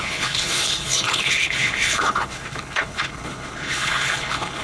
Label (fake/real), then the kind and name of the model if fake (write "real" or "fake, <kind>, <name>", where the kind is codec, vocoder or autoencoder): fake, codec, HILCodec